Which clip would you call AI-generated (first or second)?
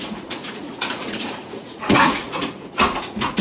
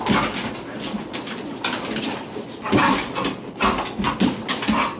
first